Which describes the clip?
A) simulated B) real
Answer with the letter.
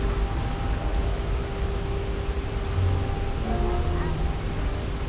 B